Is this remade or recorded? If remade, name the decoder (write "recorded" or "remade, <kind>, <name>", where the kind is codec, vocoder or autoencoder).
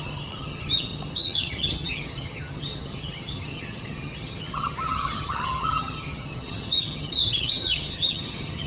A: remade, vocoder, HiFi-GAN